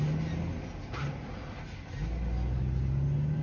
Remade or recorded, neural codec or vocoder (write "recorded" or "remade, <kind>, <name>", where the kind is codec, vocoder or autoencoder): recorded